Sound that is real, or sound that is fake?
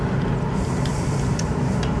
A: real